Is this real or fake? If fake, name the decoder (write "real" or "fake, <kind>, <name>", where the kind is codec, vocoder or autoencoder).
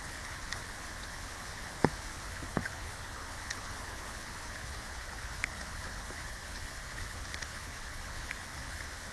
fake, codec, HILCodec